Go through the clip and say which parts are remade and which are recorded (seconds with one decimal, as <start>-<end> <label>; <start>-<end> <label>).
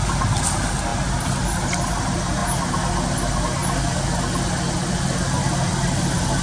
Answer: 0.0-6.4 recorded